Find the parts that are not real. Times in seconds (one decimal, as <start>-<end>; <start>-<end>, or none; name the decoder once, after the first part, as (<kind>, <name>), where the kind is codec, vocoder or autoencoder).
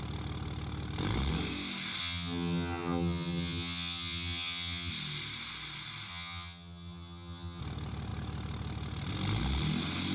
2.0-4.9 (vocoder, HiFi-GAN); 6.1-7.6